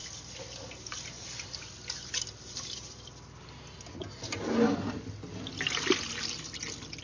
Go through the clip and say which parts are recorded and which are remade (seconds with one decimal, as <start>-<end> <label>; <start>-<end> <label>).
0.0-7.0 recorded